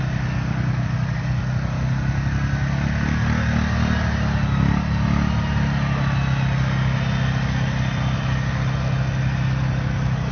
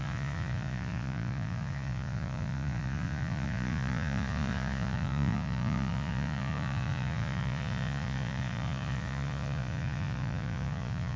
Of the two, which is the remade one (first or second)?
second